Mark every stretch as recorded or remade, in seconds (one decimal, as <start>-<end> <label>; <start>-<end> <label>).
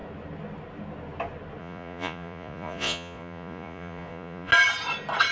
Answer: 0.0-1.6 recorded; 1.6-4.5 remade; 4.5-5.3 recorded